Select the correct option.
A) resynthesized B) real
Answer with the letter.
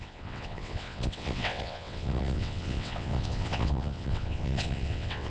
A